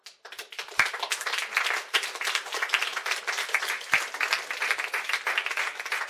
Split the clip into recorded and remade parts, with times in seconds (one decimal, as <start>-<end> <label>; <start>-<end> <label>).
0.0-6.1 recorded